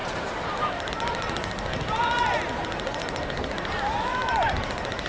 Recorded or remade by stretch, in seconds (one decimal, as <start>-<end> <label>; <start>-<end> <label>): 0.0-5.1 recorded